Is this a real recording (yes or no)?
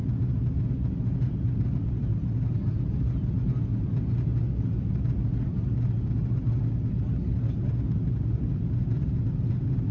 yes